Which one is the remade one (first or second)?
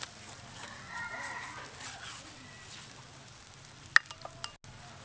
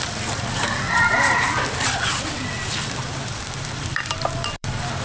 second